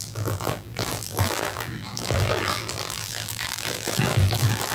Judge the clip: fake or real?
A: fake